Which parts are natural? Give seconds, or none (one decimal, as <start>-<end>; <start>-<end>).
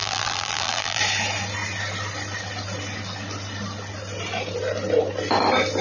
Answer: 1.0-5.8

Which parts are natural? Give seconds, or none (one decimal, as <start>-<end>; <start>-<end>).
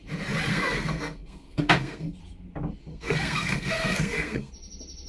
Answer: 0.0-0.5; 2.2-2.9; 4.5-5.1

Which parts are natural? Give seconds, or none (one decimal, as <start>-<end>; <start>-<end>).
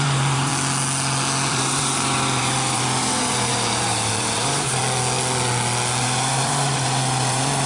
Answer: 0.5-1.5; 4.8-6.0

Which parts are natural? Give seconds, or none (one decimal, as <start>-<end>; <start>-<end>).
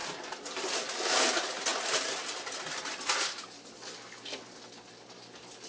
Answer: 0.0-5.7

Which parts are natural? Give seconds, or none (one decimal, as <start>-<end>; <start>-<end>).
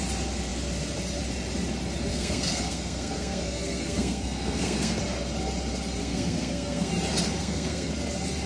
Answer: 0.0-2.1; 5.0-6.0; 6.9-7.4; 7.9-8.5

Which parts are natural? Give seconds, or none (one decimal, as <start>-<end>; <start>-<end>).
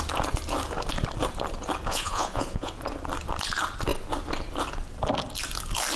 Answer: 0.0-1.9; 2.7-6.0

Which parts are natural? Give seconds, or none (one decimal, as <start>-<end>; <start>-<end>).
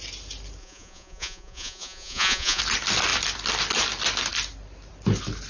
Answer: 0.0-0.6; 2.6-5.5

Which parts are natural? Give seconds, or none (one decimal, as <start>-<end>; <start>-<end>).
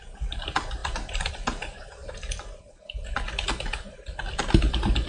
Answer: 0.0-0.8; 1.3-5.1